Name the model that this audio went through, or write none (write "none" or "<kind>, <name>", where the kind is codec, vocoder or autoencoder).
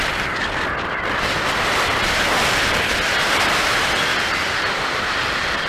none